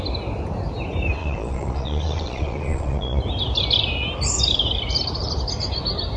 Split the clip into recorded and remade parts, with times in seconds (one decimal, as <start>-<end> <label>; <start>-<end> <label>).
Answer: 0.0-1.2 recorded; 1.2-3.2 remade; 3.2-6.2 recorded